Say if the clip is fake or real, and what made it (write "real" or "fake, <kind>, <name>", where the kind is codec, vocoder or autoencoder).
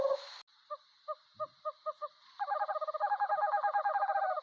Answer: real